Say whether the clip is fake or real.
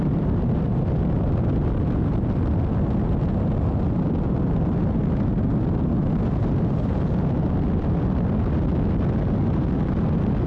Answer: real